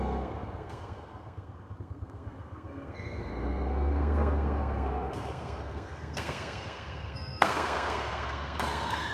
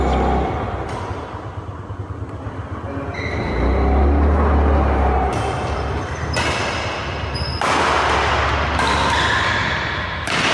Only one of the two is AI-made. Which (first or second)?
first